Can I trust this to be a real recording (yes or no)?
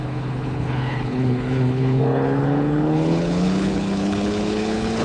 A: no